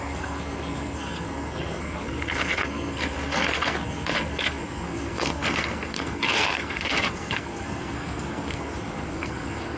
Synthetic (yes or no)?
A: yes